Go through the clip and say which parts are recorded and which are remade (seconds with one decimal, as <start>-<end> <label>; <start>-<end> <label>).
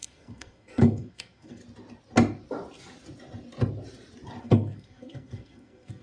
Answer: 0.0-1.6 remade; 1.6-4.4 recorded; 4.4-6.0 remade